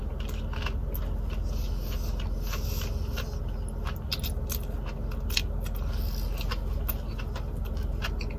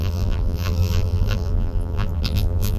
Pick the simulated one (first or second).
second